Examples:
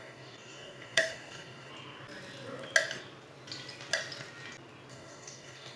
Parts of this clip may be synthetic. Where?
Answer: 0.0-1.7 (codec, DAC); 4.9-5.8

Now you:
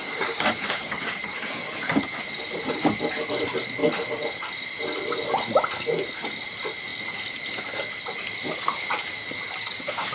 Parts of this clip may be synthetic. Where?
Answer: 0.0-1.6 (codec, DAC)

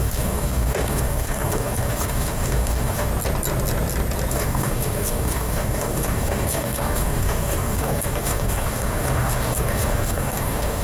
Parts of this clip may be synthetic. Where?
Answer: 0.0-3.1 (codec, DAC); 4.3-10.8